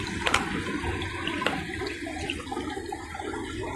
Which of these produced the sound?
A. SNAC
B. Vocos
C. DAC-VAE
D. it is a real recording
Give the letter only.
D